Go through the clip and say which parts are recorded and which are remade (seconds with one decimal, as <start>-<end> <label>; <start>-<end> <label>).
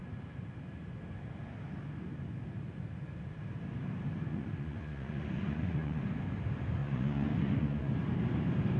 0.0-4.3 recorded; 4.3-6.0 remade; 6.0-6.8 recorded; 6.8-7.9 remade; 7.9-8.8 recorded